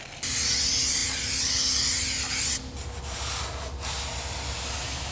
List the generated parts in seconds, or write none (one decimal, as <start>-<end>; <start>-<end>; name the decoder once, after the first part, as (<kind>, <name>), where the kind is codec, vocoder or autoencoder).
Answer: none